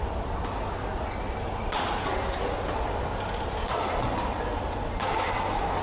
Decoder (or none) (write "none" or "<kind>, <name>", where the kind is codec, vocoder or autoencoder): none